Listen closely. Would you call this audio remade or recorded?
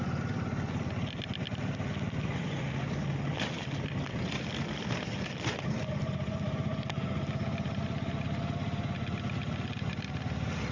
recorded